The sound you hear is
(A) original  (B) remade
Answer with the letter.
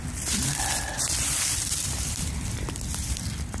B